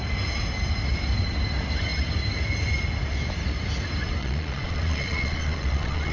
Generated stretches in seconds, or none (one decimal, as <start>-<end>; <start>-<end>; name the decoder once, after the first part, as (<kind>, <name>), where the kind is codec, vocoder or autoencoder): 4.2-6.1 (vocoder, Vocos)